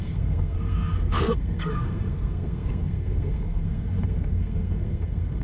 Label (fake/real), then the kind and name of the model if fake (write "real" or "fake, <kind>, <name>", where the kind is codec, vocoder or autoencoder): fake, codec, SNAC